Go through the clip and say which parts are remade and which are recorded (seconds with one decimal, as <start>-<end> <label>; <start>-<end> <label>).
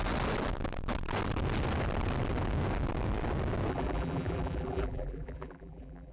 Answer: 0.0-3.7 recorded; 3.7-6.1 remade